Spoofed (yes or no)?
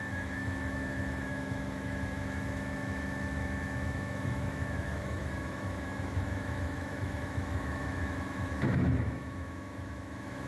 yes